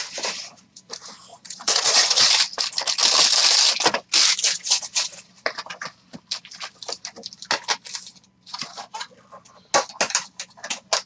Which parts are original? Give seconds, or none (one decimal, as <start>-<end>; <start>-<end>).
0.0-1.3; 2.3-11.1